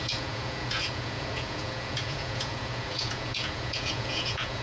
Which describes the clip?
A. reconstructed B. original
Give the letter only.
A